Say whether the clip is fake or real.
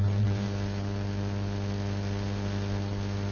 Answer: real